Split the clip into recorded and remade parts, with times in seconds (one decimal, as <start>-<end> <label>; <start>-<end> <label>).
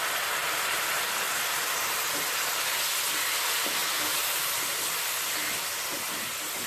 0.0-0.4 recorded; 0.4-2.5 remade; 2.5-3.8 recorded; 3.8-5.0 remade; 5.0-5.9 recorded; 5.9-6.7 remade